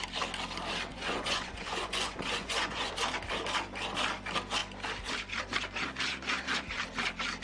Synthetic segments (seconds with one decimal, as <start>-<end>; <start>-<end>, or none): 0.9-2.9